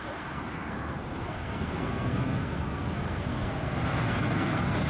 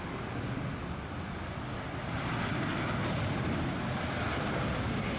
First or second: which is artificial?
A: first